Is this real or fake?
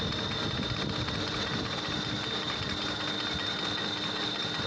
real